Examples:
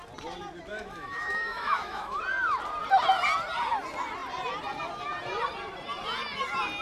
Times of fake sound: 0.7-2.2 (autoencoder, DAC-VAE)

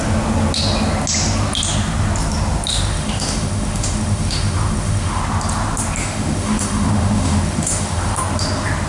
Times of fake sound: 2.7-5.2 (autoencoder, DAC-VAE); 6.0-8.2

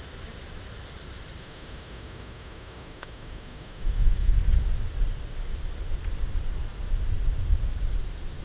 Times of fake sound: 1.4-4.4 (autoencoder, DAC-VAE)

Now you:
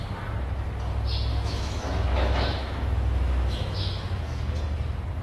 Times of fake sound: 1.3-4.4 (autoencoder, DAC-VAE)

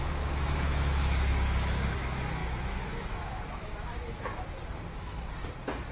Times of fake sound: 0.0-4.3 (autoencoder, DAC-VAE)

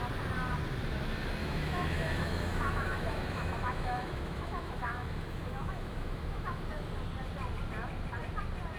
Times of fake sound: 1.4-6.7 (autoencoder, DAC-VAE)

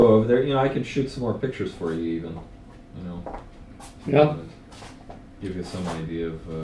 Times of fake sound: none

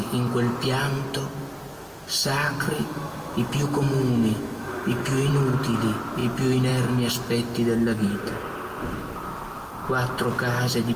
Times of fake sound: 2.8-5.3 (autoencoder, DAC-VAE)